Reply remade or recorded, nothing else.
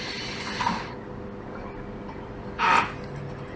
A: recorded